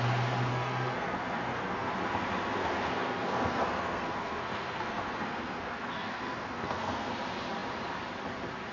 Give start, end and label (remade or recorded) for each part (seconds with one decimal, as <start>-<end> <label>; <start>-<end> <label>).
0.0-0.5 recorded; 0.5-1.9 remade; 1.9-2.6 recorded; 2.6-7.1 remade; 7.1-8.7 recorded